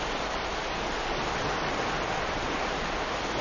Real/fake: real